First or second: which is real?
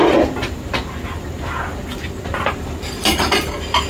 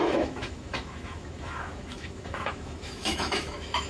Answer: first